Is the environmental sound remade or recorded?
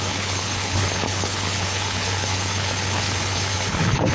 remade